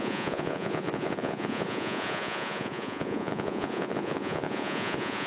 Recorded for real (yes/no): no